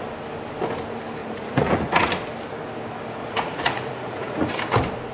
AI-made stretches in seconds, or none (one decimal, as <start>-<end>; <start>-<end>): 1.2-2.1; 3.2-4.5